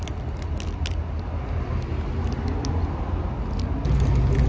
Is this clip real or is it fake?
real